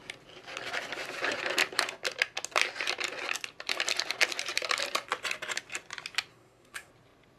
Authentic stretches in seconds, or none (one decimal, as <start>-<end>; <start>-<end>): 0.0-6.3; 6.9-7.4